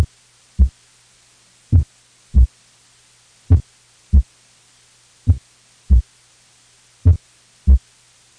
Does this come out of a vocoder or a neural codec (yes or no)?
no